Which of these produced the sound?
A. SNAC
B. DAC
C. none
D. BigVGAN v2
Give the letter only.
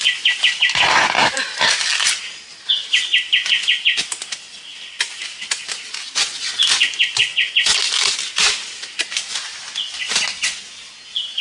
C